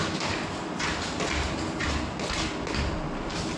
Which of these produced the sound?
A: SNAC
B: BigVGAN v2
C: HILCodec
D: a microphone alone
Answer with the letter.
D